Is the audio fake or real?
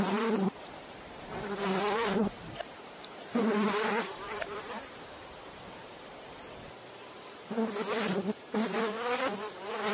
fake